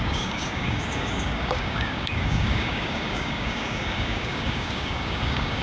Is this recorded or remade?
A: remade